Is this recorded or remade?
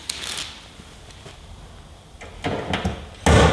recorded